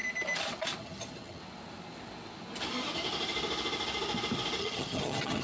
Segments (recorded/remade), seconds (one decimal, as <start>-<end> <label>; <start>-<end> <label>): 0.0-0.8 recorded; 0.8-1.4 remade; 1.4-4.6 recorded; 4.6-5.4 remade

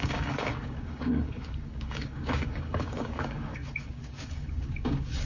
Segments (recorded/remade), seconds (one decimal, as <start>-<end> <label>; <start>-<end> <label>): 0.0-5.3 remade

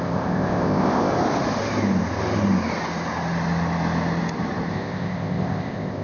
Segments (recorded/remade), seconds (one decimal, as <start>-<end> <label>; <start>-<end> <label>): 0.0-1.1 remade; 1.1-4.7 recorded; 4.7-6.0 remade